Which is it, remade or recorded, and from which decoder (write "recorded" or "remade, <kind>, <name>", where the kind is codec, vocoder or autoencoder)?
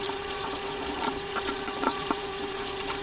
remade, vocoder, Vocos